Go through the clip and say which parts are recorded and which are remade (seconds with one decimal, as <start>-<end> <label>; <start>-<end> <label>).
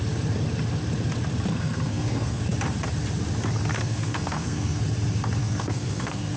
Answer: 0.0-1.5 recorded; 1.5-2.4 remade; 2.4-3.7 recorded; 3.7-4.8 remade; 4.8-5.4 recorded; 5.4-6.4 remade